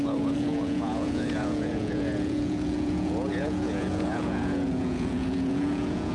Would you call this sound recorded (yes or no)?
no